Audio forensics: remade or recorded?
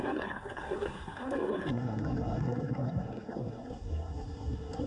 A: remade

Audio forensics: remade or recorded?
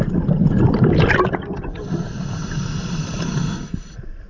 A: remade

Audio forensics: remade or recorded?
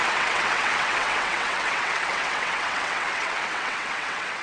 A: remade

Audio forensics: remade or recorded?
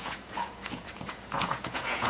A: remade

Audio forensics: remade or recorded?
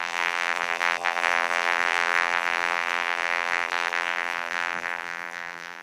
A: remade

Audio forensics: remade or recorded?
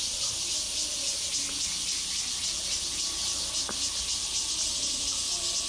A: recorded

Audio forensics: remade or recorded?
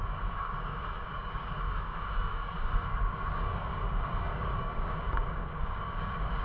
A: remade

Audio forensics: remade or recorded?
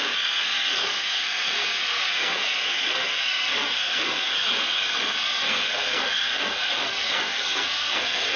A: remade